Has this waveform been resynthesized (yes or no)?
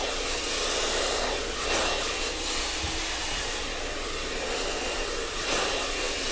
no